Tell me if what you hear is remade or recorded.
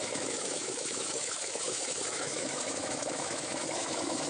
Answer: remade